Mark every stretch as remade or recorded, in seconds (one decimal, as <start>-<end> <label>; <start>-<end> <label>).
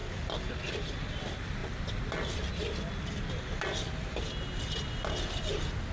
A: 0.0-5.9 recorded